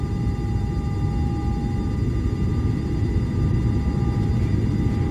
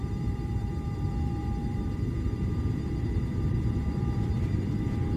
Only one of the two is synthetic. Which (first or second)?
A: second